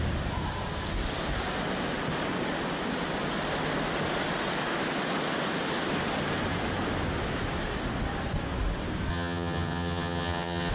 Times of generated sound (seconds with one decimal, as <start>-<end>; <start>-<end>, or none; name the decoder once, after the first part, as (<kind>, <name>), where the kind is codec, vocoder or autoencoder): 9.1-10.7 (vocoder, HiFi-GAN)